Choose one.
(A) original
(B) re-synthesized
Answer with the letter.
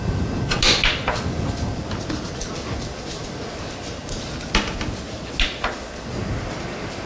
A